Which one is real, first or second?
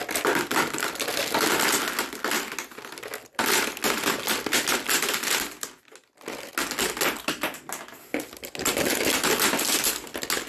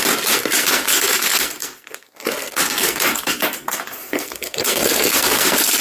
first